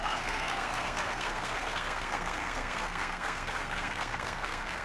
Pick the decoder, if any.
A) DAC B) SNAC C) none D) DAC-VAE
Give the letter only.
B